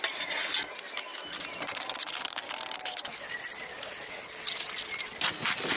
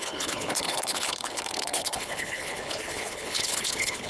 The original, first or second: first